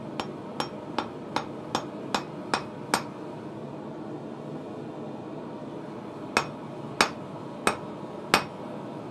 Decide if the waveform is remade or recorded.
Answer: recorded